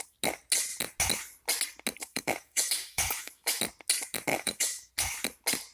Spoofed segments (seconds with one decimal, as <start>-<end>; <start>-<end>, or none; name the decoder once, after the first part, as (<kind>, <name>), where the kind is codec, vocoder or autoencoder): 2.0-3.6 (autoencoder, DAC-VAE); 4.3-4.9